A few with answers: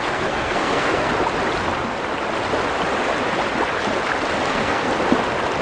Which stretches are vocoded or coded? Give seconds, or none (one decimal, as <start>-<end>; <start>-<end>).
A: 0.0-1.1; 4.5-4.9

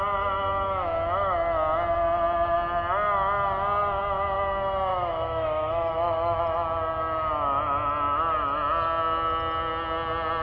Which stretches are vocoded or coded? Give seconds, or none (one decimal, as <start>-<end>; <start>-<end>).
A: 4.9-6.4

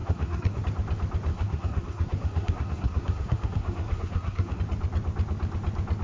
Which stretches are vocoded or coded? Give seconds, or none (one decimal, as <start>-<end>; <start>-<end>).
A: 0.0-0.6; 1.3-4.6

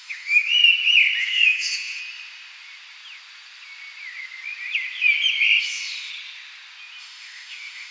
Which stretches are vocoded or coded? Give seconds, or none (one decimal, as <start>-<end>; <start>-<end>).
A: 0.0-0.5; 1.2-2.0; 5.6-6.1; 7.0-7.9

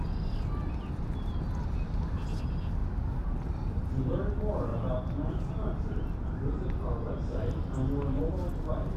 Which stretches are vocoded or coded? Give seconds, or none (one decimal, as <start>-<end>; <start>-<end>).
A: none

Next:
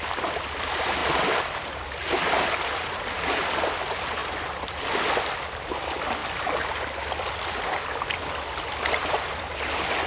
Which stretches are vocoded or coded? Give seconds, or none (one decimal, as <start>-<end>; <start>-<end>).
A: none